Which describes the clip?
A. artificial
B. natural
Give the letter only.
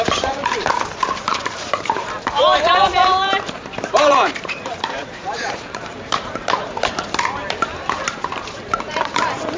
A